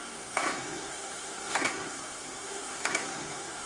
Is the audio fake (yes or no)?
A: yes